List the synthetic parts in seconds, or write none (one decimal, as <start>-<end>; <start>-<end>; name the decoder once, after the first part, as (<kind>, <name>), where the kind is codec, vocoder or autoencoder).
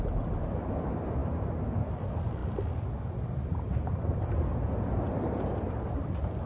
none